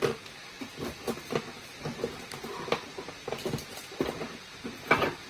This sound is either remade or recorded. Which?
recorded